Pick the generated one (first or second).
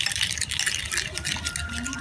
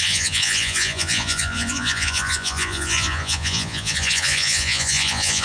second